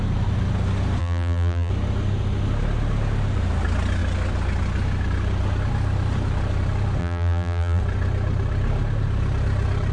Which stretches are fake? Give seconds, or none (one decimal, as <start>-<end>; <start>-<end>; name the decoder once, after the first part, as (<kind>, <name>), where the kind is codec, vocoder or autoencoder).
1.0-1.7 (vocoder, BigVGAN v2); 7.0-7.8